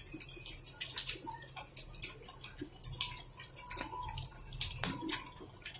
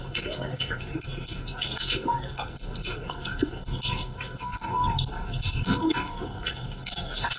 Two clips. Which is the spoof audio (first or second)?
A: second